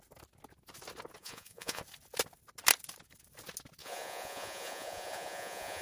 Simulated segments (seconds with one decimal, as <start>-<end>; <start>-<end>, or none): 1.2-1.8; 3.8-5.8